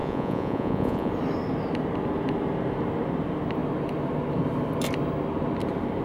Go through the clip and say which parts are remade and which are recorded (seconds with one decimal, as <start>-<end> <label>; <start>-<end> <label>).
0.0-1.1 remade; 1.1-6.0 recorded